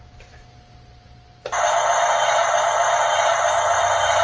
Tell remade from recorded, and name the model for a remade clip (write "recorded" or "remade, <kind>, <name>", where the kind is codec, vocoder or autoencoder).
recorded